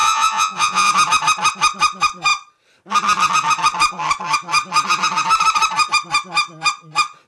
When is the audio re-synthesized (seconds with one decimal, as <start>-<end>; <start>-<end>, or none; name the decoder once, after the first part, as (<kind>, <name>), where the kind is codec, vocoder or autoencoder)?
0.0-0.9 (vocoder, Vocos)